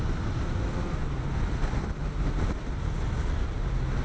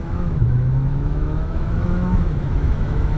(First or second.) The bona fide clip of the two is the first